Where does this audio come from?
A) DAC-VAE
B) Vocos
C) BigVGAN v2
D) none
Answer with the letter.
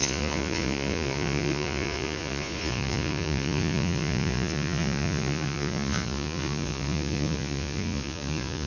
B